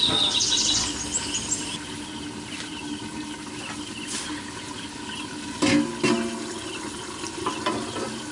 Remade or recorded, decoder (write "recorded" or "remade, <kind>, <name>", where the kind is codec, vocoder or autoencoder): recorded